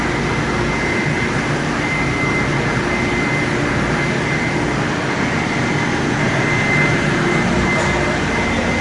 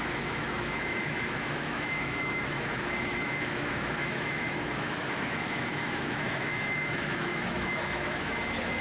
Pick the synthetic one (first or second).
second